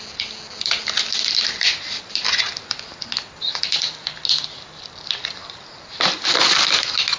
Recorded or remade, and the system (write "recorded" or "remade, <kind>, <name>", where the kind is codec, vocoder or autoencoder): recorded